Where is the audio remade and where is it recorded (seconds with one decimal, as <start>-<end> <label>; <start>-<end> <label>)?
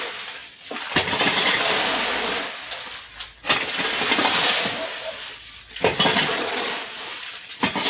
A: 0.0-6.1 recorded; 6.1-6.7 remade; 6.7-7.9 recorded